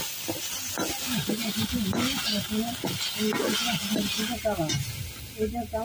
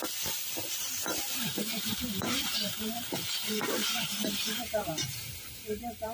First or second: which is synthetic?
second